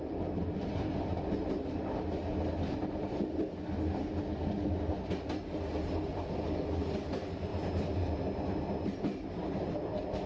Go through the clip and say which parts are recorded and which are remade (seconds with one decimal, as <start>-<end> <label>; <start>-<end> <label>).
0.0-10.3 recorded